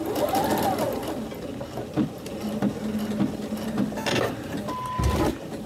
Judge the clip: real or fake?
real